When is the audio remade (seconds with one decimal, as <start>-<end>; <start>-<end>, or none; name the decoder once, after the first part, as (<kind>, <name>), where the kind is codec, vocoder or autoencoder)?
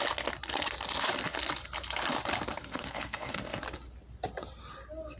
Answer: 2.6-3.6 (codec, SNAC)